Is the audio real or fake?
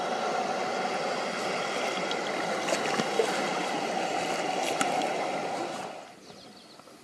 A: real